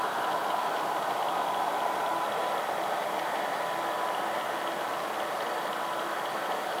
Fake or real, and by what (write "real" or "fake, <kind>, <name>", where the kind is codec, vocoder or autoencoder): real